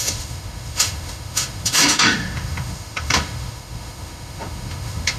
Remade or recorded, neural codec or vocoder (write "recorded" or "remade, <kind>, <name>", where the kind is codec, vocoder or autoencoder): remade, autoencoder, DAC-VAE